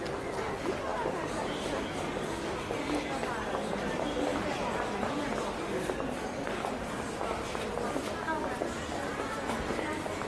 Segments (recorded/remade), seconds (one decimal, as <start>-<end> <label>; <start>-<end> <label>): 0.0-10.3 recorded